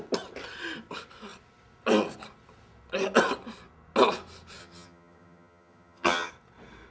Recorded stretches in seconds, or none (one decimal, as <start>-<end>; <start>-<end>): 0.0-4.6; 6.3-6.9

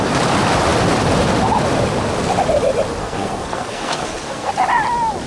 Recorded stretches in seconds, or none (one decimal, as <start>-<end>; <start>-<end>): 0.0-3.0; 4.5-5.3

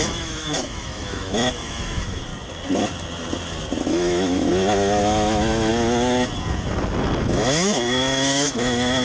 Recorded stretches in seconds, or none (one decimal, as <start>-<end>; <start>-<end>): 2.3-3.9; 4.5-5.0; 5.7-7.2

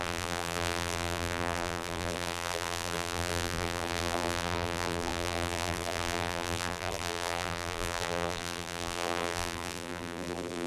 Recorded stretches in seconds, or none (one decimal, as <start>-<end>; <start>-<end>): none

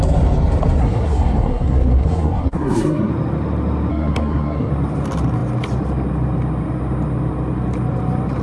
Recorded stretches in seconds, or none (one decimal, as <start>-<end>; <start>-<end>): 0.0-0.8; 3.1-3.9; 4.7-8.4

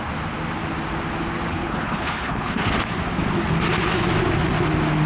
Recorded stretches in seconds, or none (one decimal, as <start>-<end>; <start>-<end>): 0.0-1.5; 2.7-5.1